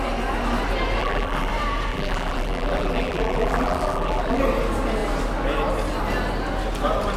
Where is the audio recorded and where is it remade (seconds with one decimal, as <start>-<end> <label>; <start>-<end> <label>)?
0.0-1.0 recorded; 1.0-1.5 remade; 1.5-1.9 recorded; 1.9-4.4 remade; 4.4-7.2 recorded